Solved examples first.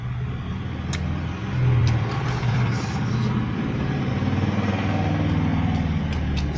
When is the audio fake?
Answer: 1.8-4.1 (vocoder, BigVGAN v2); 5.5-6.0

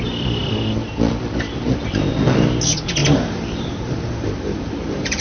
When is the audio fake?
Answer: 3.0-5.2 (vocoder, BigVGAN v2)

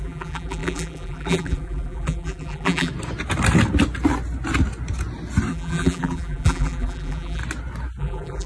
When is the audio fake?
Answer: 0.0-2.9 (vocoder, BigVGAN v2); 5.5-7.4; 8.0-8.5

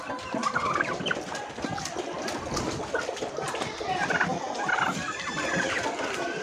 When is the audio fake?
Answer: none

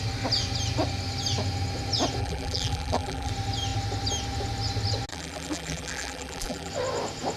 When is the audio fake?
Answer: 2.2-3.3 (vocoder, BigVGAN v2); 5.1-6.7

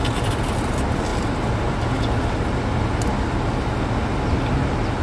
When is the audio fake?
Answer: none

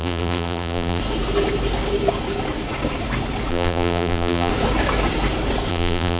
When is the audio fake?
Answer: 0.0-1.0 (vocoder, BigVGAN v2); 3.5-4.5; 5.7-6.2

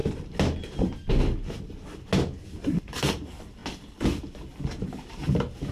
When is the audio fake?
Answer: 2.8-3.6 (vocoder, BigVGAN v2); 4.6-5.2